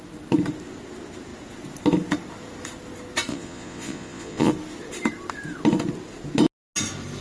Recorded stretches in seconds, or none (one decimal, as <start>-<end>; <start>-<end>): 0.0-3.3; 4.5-7.2

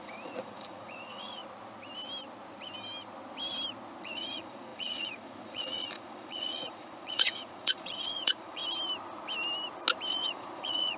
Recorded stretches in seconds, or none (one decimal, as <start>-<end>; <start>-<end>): 1.4-4.0; 8.6-10.1